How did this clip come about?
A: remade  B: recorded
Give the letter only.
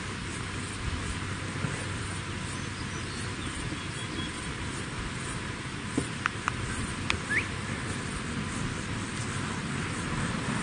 B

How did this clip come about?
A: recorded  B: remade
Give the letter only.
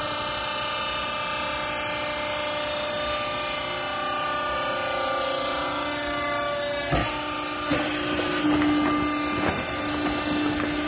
A